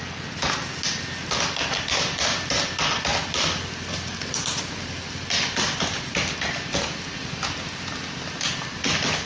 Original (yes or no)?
yes